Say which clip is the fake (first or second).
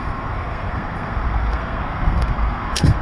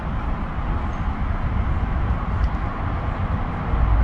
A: first